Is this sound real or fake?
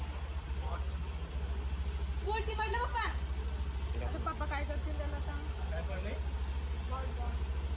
real